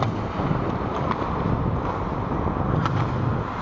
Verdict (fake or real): real